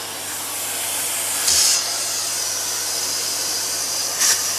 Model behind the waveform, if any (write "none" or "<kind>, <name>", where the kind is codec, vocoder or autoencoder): none